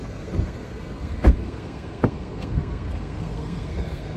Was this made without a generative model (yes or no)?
no